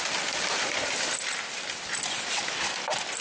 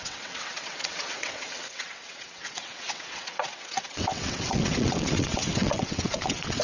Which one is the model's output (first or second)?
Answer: second